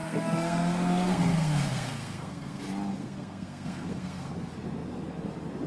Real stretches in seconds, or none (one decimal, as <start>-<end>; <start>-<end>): 2.6-3.0; 4.3-5.7